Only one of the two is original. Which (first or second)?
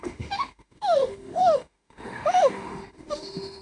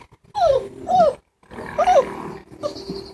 second